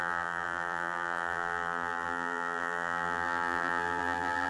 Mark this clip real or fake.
fake